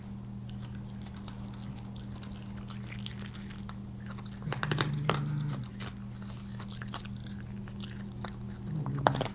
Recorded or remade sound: recorded